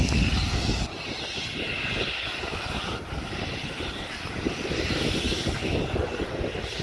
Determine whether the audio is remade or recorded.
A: recorded